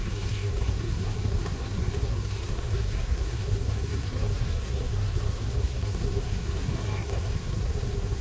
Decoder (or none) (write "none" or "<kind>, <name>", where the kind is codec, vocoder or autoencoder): codec, SNAC